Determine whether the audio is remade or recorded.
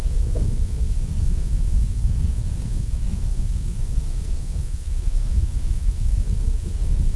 remade